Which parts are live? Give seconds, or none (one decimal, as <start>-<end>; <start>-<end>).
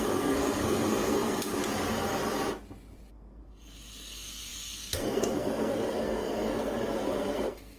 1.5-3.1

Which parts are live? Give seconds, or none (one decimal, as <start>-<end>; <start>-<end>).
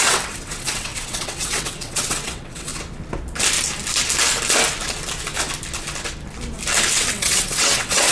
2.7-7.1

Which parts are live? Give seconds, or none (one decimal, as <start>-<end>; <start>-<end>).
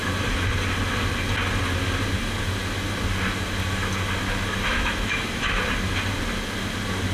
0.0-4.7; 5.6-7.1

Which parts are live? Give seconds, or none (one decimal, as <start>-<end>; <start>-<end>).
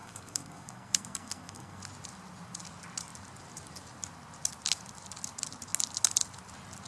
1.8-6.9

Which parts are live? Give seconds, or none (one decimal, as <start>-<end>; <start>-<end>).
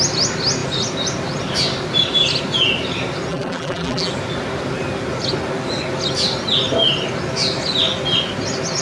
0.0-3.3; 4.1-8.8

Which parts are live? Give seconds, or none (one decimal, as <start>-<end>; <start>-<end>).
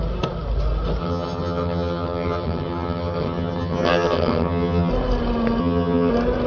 0.0-1.0; 4.9-5.6; 6.1-6.5